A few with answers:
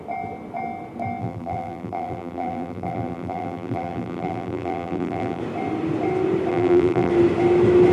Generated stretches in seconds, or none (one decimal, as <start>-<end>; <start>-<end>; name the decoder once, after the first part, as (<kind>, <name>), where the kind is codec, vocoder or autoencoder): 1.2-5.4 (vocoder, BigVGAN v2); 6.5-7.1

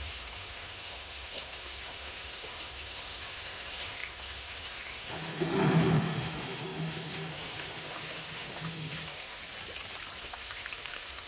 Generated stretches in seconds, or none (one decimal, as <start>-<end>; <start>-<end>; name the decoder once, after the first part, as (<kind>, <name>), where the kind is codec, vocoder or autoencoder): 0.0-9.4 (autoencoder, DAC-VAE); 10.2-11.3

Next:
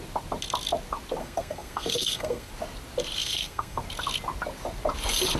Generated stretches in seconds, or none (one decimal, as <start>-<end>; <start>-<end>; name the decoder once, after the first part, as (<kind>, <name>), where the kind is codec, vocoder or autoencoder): 1.2-2.5 (codec, SNAC); 3.2-3.8

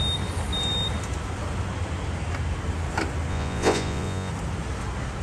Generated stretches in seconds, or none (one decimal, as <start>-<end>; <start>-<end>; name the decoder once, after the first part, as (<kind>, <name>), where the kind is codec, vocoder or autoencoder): 3.3-4.3 (vocoder, Vocos)

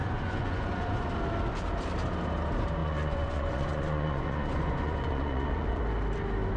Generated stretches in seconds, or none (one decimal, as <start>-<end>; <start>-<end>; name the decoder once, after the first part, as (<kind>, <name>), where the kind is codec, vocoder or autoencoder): 0.0-1.1 (vocoder, Vocos); 2.8-5.8

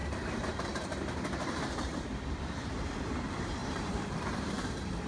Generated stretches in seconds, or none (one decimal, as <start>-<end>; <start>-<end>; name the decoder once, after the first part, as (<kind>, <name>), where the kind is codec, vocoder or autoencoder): 0.0-5.1 (vocoder, BigVGAN v2)